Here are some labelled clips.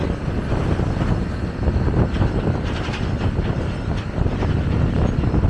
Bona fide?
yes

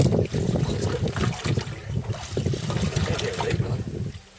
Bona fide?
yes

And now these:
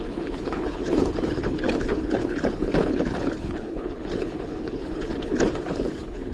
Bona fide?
no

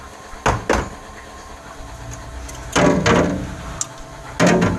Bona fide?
yes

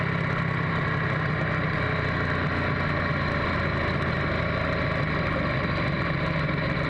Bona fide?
yes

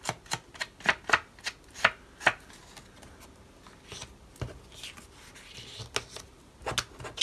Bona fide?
yes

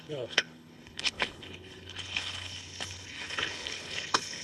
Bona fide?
no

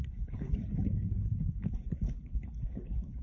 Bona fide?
no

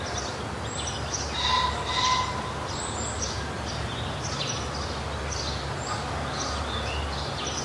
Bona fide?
yes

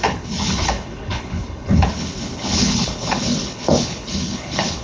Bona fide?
no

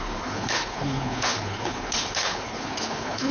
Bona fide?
no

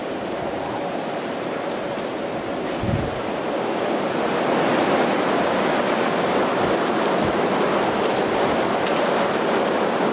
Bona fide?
yes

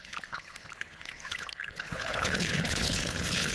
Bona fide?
no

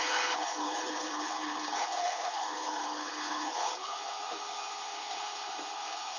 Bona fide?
no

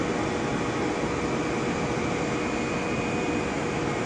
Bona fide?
yes